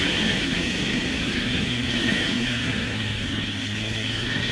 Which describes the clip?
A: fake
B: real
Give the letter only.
A